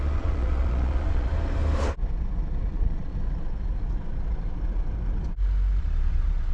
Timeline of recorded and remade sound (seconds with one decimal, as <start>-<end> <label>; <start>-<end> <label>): 0.0-1.3 remade; 1.3-2.7 recorded; 2.7-3.1 remade; 3.1-5.8 recorded; 5.8-6.5 remade